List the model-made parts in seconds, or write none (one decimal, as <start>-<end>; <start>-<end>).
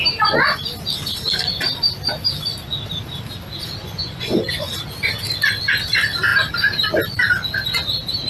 3.8-4.7